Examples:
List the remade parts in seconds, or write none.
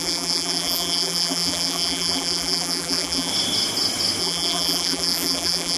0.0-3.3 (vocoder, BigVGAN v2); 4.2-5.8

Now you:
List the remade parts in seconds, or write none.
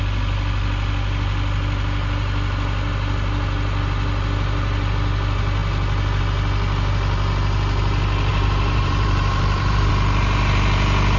8.3-9.9 (vocoder, BigVGAN v2)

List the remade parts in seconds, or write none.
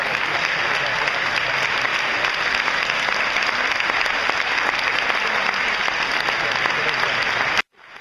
0.9-1.5 (vocoder, BigVGAN v2)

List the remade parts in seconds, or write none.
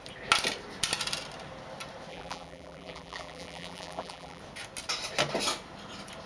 2.1-4.4 (vocoder, BigVGAN v2)